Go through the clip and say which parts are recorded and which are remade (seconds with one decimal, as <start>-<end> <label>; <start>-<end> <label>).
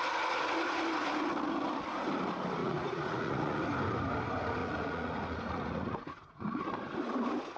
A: 0.0-2.6 recorded; 2.6-3.6 remade; 3.6-4.6 recorded; 4.6-6.6 remade; 6.6-7.6 recorded